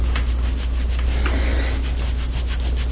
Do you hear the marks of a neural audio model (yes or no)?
no